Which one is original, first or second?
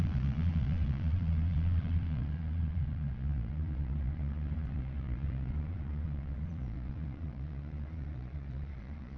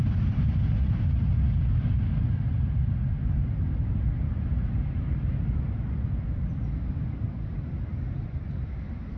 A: second